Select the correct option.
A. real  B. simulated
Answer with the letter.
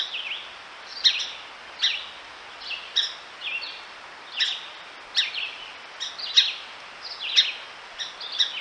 A